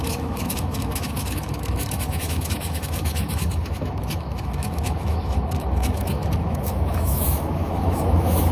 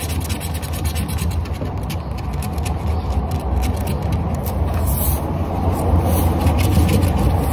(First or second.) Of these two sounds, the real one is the second